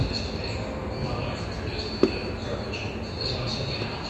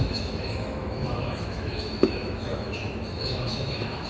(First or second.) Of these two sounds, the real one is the first